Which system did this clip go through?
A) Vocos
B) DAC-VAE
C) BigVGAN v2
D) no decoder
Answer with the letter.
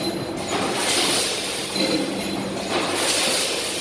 D